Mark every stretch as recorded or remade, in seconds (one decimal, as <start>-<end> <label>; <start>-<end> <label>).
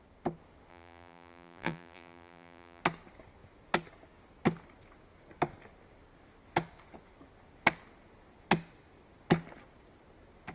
0.0-0.7 recorded; 0.7-2.8 remade; 2.8-10.5 recorded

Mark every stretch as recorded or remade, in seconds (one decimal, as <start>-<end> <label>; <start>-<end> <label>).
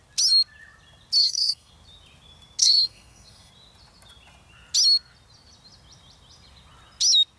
0.0-1.2 recorded; 1.2-1.7 remade; 1.7-2.6 recorded; 2.6-3.5 remade; 3.5-7.4 recorded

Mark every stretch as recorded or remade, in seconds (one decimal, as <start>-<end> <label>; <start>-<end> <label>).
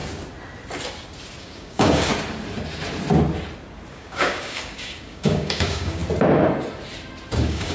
0.0-1.4 recorded; 1.4-2.1 remade; 2.1-3.9 recorded; 3.9-6.0 remade; 6.0-7.3 recorded; 7.3-7.7 remade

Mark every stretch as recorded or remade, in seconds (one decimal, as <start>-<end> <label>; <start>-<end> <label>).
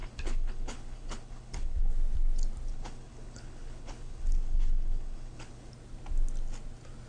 0.0-1.9 remade; 1.9-2.7 recorded; 2.7-5.7 remade; 5.7-7.1 recorded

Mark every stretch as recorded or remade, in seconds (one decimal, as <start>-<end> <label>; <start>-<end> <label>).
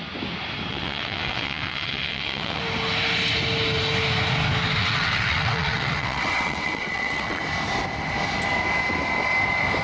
0.0-0.7 recorded; 0.7-2.6 remade; 2.6-4.8 recorded; 4.8-7.4 remade; 7.4-9.8 recorded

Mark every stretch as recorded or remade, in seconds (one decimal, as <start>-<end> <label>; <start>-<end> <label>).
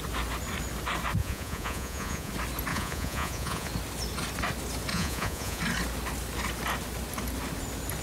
0.0-1.2 recorded; 1.2-2.3 remade; 2.3-2.7 recorded; 2.7-3.7 remade; 3.7-4.9 recorded; 4.9-5.6 remade; 5.6-8.0 recorded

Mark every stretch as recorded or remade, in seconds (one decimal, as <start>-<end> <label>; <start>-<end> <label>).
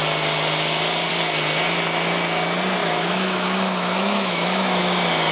0.0-2.8 recorded; 2.8-4.8 remade; 4.8-5.3 recorded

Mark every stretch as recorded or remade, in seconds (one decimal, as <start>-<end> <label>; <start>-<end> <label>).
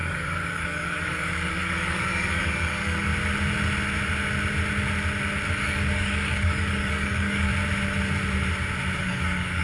0.0-3.1 remade; 3.1-5.5 recorded; 5.5-7.5 remade; 7.5-9.0 recorded; 9.0-9.6 remade